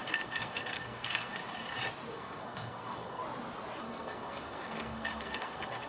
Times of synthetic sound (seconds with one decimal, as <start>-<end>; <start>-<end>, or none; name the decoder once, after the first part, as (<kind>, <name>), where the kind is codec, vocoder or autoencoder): 0.0-1.4 (codec, SNAC); 2.1-3.2; 3.8-5.9